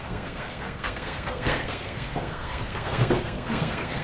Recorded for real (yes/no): no